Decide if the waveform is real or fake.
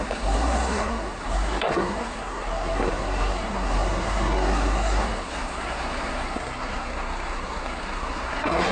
fake